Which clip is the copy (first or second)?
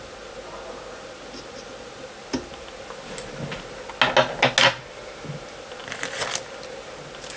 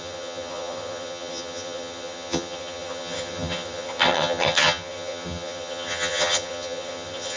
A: second